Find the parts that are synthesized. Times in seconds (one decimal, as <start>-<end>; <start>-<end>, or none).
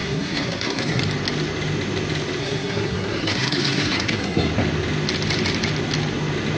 0.0-1.0; 2.4-4.5